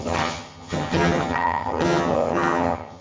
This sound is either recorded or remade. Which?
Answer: remade